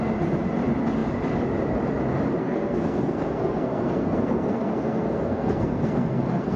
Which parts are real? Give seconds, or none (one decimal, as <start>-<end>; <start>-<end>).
0.0-2.4

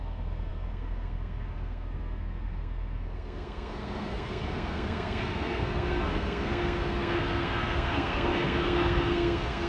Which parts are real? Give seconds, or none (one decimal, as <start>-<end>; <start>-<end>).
none

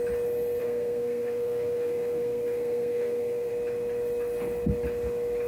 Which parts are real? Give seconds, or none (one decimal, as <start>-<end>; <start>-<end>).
0.0-0.6; 3.5-5.5

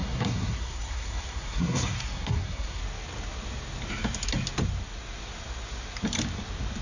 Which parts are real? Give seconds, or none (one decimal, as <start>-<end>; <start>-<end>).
2.8-6.8

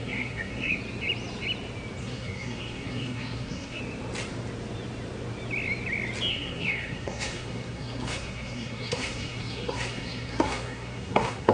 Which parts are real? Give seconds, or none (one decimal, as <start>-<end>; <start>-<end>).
0.8-2.0; 3.8-6.3

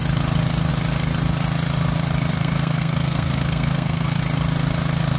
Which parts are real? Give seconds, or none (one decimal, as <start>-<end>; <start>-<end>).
0.0-2.3; 4.2-5.2

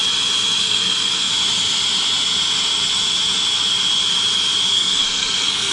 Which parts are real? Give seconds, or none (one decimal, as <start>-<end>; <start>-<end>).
0.0-0.6; 1.3-4.7